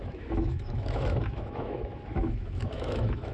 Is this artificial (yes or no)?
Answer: yes